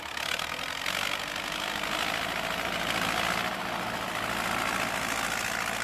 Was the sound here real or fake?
real